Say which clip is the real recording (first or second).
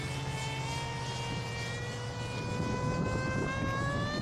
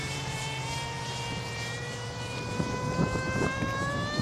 first